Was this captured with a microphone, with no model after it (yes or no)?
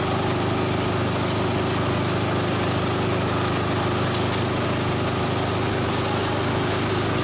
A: yes